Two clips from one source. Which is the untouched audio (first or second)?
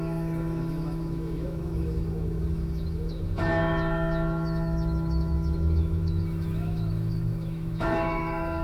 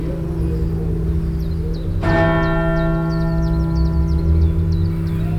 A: second